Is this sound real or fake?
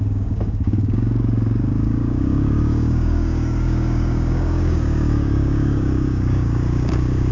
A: fake